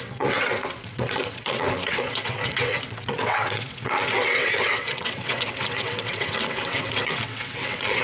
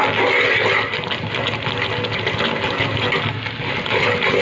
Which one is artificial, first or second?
first